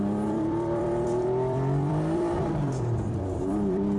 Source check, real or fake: fake